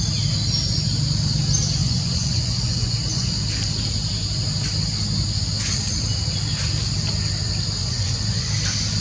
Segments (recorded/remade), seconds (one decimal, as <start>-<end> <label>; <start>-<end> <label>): 0.0-1.8 recorded; 1.8-3.3 remade; 3.3-7.8 recorded; 7.8-8.5 remade; 8.5-9.0 recorded